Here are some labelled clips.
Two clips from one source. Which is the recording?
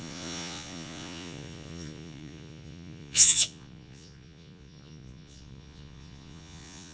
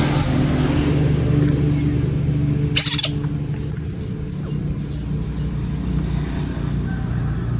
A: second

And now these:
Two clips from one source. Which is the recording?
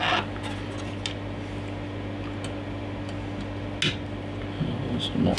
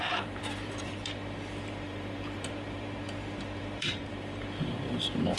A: first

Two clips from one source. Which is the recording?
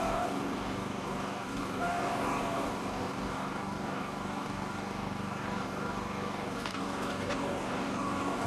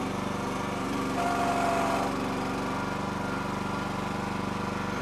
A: second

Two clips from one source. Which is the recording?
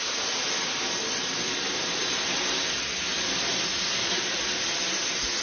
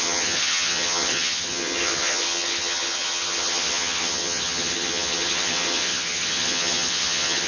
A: first